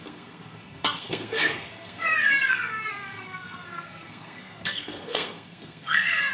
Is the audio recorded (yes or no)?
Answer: no